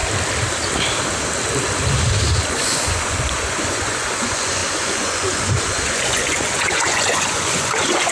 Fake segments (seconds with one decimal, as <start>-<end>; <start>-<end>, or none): 2.5-8.1